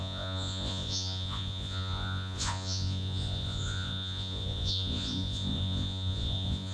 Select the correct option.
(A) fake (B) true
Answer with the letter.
A